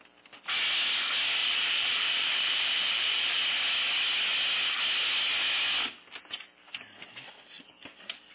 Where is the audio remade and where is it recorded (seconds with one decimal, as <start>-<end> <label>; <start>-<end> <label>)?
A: 0.0-1.4 recorded; 1.4-3.4 remade; 3.4-8.3 recorded